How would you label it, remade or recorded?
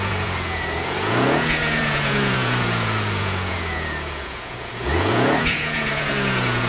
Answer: remade